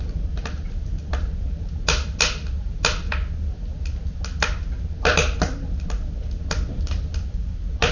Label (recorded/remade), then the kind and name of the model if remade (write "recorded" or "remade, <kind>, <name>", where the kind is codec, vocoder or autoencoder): recorded